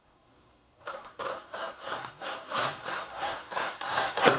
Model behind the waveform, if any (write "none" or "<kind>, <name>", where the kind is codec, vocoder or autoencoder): codec, SNAC